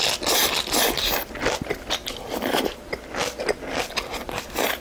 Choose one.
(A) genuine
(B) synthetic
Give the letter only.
A